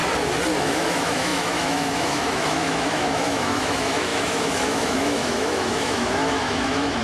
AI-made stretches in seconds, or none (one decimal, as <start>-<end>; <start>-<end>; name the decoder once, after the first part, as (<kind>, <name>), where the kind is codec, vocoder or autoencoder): 0.6-7.0 (autoencoder, DAC-VAE)